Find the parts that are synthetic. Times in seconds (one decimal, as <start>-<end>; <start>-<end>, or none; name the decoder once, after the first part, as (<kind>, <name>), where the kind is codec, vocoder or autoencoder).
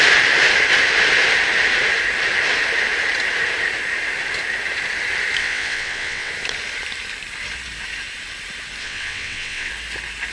5.4-6.3 (vocoder, WaveNeXt); 8.8-9.7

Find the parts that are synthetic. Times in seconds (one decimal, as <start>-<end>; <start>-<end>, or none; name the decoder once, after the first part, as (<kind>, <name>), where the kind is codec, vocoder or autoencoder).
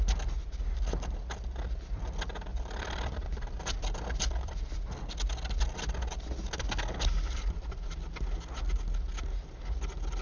2.5-5.0 (vocoder, BigVGAN v2)